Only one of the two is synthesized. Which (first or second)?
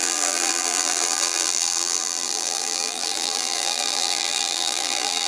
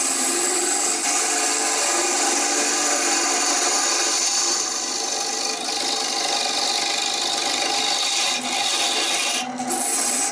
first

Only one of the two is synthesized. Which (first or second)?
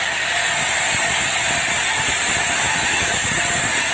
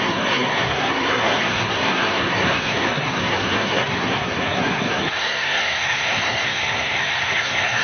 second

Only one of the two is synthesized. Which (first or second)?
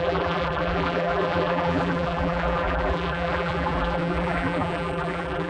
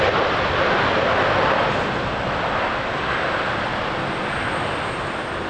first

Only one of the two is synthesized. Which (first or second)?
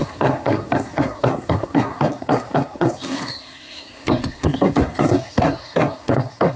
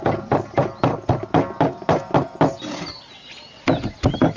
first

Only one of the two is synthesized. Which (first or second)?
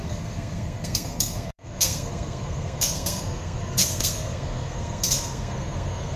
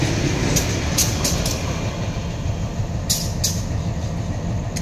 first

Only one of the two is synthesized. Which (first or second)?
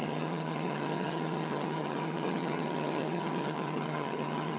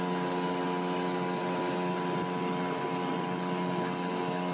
first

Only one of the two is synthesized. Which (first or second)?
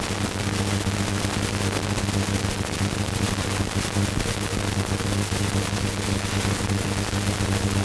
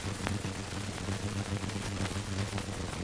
second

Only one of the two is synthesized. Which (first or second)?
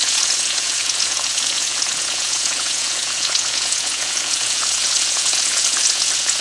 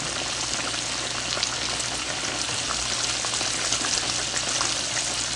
first